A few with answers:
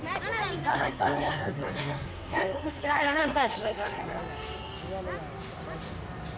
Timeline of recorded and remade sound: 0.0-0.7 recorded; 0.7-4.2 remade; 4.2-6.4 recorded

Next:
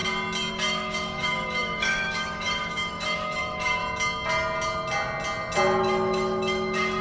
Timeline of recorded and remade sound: 0.0-0.5 recorded; 0.5-3.8 remade; 3.8-5.8 recorded; 5.8-7.0 remade

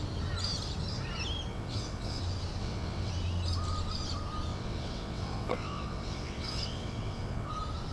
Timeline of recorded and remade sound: 0.0-1.5 recorded; 1.5-2.2 remade; 2.2-2.6 recorded; 2.6-3.1 remade; 3.1-4.5 recorded; 4.5-7.5 remade; 7.5-7.9 recorded

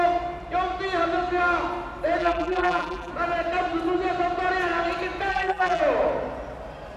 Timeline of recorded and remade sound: 0.0-2.2 recorded; 2.2-3.1 remade; 3.1-5.3 recorded; 5.3-5.8 remade; 5.8-7.0 recorded

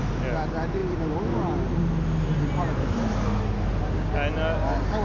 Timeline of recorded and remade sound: 0.0-5.0 recorded

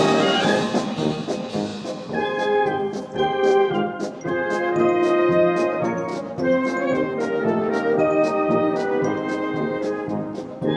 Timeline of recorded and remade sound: 0.0-3.5 recorded; 3.5-4.3 remade; 4.3-10.8 recorded

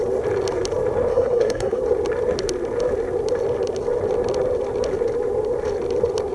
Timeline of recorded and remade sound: 0.0-1.1 recorded; 1.1-1.8 remade; 1.8-6.3 recorded